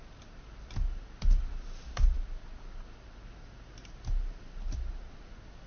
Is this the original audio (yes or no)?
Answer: yes